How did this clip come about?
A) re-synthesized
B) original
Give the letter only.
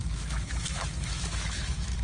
A